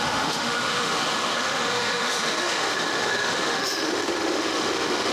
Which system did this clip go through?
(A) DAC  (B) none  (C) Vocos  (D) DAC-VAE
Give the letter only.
D